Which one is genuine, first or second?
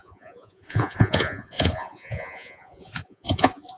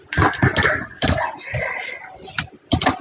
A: second